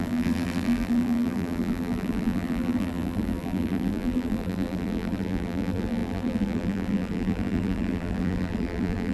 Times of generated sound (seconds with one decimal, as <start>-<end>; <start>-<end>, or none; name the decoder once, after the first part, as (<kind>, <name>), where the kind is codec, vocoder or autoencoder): 0.0-9.1 (vocoder, BigVGAN v2)